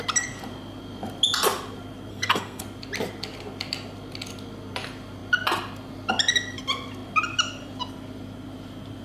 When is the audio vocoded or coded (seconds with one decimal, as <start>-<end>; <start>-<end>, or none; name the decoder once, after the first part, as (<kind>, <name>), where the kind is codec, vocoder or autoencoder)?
2.1-2.6 (codec, SNAC)